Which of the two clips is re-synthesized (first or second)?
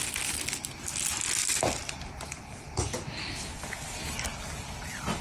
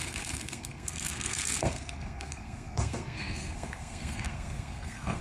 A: second